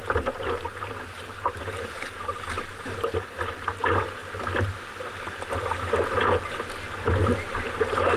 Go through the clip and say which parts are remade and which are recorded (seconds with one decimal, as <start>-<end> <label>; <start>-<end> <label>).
0.0-8.2 recorded